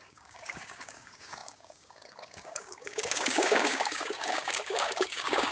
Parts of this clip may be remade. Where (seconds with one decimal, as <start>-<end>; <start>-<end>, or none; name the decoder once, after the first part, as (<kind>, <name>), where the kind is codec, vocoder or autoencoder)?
0.0-5.5 (codec, DAC)